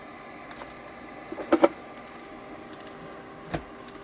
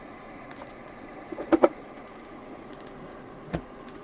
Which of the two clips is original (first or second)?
first